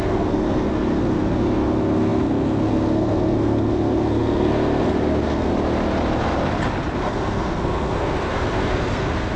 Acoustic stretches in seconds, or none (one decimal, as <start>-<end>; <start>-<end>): 5.5-7.0